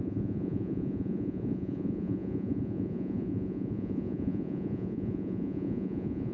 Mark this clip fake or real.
fake